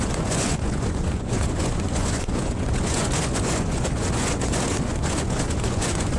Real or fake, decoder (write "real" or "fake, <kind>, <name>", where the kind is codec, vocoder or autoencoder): fake, vocoder, Vocos